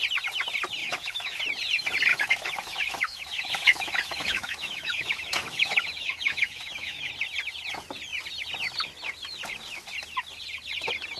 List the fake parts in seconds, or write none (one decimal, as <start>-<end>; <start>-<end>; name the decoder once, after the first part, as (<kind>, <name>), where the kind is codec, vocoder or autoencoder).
0.8-1.4 (autoencoder, DAC-VAE); 2.1-7.1